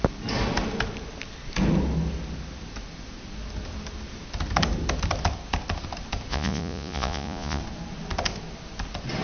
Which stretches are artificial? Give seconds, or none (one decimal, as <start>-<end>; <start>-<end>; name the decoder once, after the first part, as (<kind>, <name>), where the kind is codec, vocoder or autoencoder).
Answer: 6.3-7.6 (vocoder, Vocos)